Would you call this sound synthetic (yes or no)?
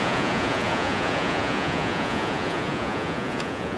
yes